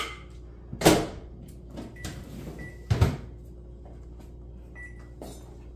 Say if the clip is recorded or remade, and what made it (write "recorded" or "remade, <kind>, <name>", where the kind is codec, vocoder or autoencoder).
recorded